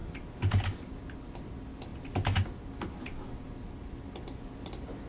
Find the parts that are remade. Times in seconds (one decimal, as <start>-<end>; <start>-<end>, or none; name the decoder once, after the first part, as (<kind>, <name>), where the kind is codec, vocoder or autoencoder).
none